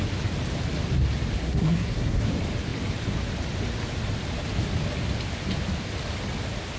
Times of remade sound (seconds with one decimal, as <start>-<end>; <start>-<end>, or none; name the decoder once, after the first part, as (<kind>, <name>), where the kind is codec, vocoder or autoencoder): 1.4-2.3 (codec, SNAC)